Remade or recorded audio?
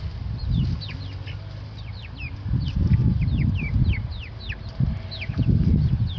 recorded